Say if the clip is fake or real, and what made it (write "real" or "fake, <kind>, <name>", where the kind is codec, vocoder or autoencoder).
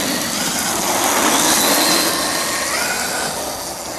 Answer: real